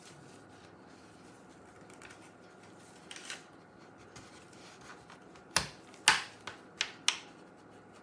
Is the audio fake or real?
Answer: real